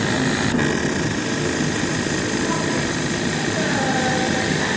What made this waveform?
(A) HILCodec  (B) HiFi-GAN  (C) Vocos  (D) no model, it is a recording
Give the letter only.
D